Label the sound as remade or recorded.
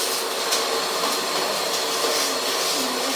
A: recorded